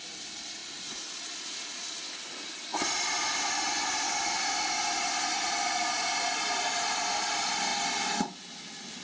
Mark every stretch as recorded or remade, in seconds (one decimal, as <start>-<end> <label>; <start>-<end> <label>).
0.0-0.6 recorded; 0.6-2.0 remade; 2.0-9.0 recorded